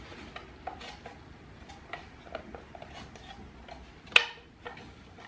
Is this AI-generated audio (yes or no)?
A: no